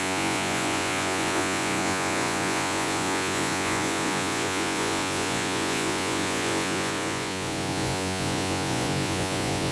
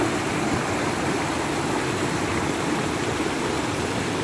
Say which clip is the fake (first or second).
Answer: first